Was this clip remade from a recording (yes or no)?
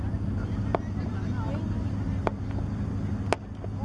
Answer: no